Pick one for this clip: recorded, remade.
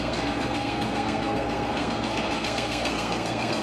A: remade